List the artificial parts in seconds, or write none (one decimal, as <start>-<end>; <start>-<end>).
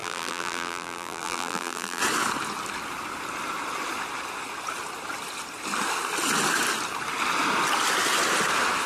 0.0-2.0